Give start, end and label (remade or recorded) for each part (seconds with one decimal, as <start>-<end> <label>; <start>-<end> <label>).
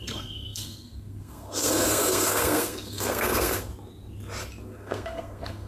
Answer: 0.0-3.7 remade; 3.7-4.6 recorded; 4.6-5.7 remade